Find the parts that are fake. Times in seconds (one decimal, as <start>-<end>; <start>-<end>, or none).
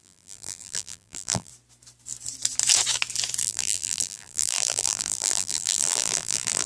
0.0-1.5; 3.4-6.7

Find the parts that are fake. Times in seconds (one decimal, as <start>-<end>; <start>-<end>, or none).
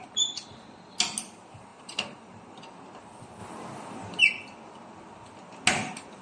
1.7-2.6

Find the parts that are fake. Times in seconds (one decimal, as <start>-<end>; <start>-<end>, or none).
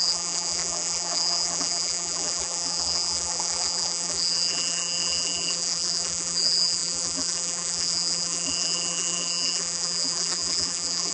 0.0-11.1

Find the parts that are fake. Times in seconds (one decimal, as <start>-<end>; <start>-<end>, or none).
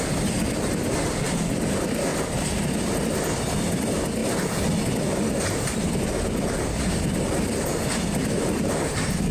2.1-3.0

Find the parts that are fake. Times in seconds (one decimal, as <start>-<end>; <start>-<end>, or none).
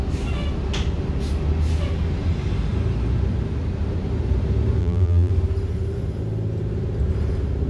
4.8-5.3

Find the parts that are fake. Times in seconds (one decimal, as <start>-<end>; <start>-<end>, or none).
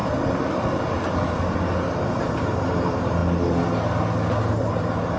2.0-3.2; 4.4-5.2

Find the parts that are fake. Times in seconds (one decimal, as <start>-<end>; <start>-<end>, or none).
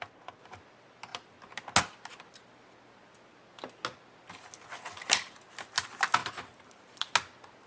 6.2-7.1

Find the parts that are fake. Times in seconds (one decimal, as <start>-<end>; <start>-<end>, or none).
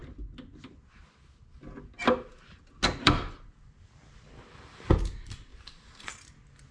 5.5-6.2